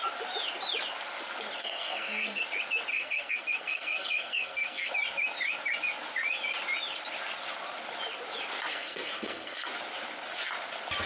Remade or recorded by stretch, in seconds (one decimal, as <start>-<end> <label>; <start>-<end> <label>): 0.0-1.6 recorded; 1.6-2.4 remade; 2.4-2.9 recorded; 2.9-4.9 remade; 4.9-8.7 recorded; 8.7-9.7 remade; 9.7-11.1 recorded